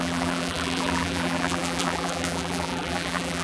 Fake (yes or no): yes